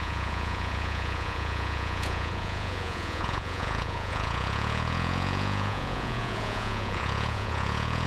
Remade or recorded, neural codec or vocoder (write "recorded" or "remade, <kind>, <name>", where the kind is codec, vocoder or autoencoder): remade, vocoder, Vocos